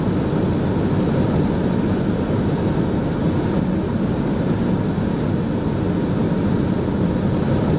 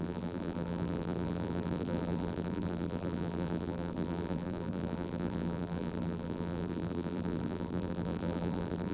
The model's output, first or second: second